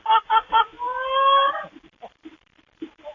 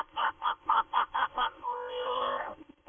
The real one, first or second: first